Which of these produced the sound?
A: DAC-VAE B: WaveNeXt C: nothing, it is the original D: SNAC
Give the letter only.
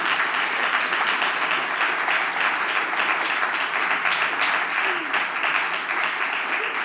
C